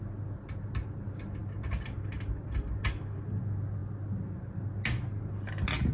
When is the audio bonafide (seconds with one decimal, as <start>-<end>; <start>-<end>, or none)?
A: 0.0-5.9